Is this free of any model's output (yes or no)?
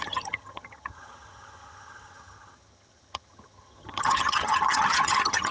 no